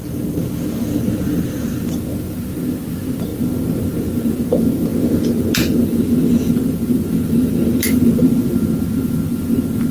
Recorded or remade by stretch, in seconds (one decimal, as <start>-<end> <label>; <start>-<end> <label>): 0.0-9.9 recorded